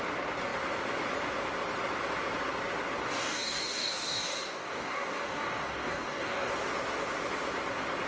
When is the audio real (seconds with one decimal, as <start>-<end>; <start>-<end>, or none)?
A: 0.0-3.0; 6.5-8.1

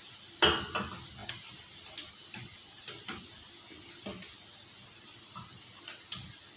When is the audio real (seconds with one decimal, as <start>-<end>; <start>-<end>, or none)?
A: 0.0-6.6